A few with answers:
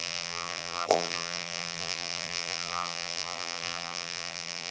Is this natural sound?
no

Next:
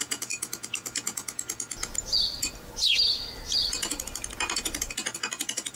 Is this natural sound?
yes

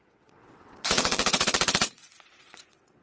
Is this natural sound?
no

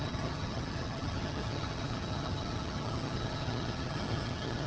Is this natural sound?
no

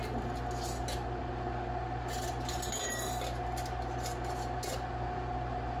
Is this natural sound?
yes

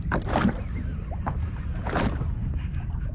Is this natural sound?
yes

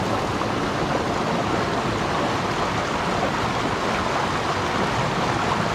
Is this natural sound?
yes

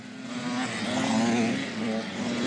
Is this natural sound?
yes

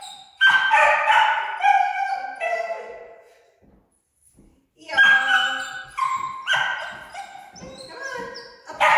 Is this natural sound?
yes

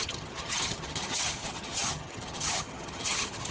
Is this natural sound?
no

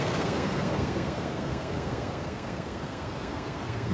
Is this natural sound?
no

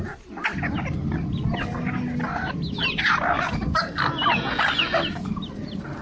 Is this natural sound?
yes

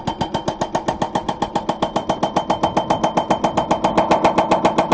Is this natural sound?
yes